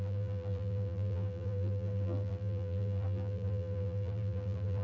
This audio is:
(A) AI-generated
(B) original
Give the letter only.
A